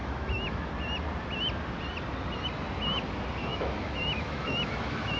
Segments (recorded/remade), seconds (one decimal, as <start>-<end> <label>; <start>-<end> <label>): 0.0-0.7 remade; 0.7-3.5 recorded; 3.5-5.2 remade